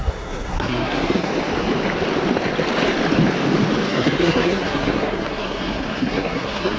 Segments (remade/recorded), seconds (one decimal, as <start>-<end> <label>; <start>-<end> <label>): 0.0-1.3 remade; 1.3-3.9 recorded; 3.9-6.8 remade